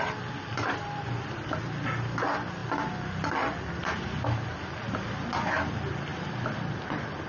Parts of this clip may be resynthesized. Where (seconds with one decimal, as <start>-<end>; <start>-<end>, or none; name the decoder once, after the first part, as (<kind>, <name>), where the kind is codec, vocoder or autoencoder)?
0.5-1.0 (vocoder, BigVGAN v2); 6.1-7.3